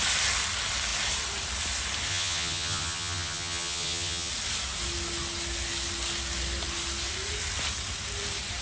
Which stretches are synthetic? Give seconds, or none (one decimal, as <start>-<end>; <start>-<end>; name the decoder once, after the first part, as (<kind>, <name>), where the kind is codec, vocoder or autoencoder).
2.1-4.3 (vocoder, HiFi-GAN)